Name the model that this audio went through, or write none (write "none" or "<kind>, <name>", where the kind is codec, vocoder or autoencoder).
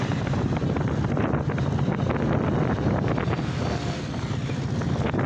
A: none